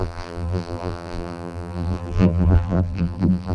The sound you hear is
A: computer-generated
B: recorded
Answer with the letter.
A